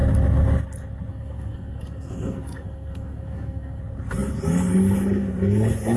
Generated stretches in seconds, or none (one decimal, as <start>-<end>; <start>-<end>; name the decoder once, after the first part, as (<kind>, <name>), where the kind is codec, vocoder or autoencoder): 1.1-3.8 (codec, SNAC)